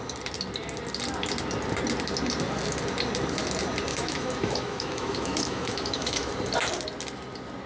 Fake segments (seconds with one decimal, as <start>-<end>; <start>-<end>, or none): 3.9-6.3